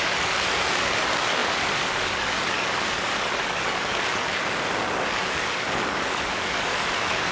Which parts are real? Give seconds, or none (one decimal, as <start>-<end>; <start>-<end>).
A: none